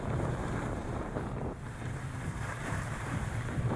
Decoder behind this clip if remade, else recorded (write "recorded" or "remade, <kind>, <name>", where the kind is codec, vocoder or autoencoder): remade, vocoder, BigVGAN v2